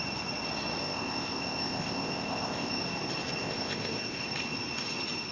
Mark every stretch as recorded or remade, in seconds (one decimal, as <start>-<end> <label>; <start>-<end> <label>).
0.0-0.8 recorded; 0.8-2.8 remade; 2.8-3.4 recorded; 3.4-4.2 remade; 4.2-5.3 recorded